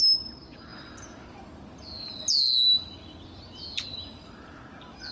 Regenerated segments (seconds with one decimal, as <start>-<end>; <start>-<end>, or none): none